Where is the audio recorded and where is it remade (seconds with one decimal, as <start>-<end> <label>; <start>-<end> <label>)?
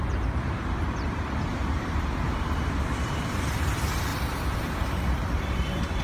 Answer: 0.0-4.1 remade; 4.1-4.6 recorded; 4.6-6.0 remade